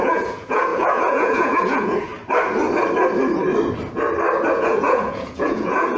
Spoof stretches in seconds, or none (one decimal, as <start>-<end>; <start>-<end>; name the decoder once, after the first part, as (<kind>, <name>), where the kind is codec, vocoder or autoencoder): 0.0-2.1 (vocoder, Vocos); 4.5-6.0